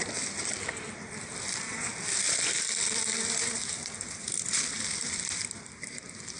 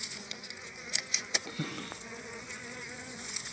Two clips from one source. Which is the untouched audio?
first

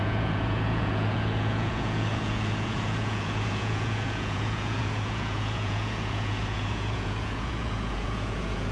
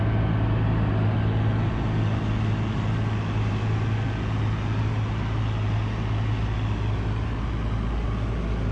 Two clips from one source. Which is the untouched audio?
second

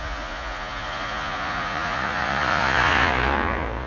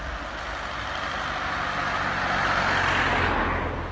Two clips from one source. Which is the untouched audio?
second